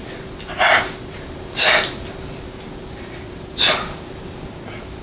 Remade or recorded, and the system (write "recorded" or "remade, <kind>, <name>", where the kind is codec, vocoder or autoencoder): recorded